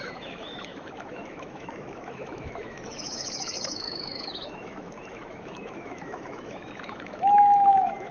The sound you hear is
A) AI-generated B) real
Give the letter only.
A